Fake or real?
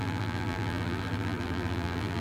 fake